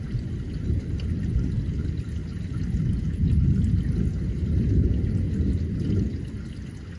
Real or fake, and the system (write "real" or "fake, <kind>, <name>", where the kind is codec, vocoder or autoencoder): real